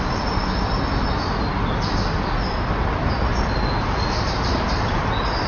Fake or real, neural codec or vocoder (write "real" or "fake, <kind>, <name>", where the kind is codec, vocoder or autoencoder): real